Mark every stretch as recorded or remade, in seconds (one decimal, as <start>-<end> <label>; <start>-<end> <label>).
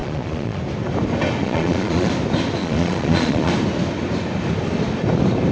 0.0-0.6 remade; 0.6-1.4 recorded; 1.4-2.1 remade; 2.1-2.6 recorded; 2.6-3.5 remade; 3.5-5.5 recorded